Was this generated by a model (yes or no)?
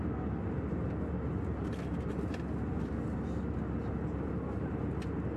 no